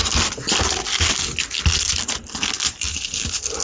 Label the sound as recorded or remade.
recorded